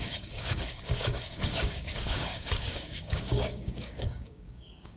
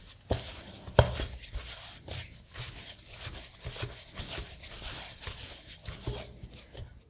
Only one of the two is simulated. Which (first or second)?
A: first